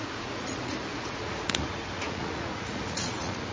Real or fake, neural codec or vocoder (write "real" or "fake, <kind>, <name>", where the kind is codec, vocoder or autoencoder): fake, vocoder, Vocos